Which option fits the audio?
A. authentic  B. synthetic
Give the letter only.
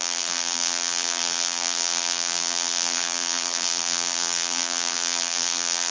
B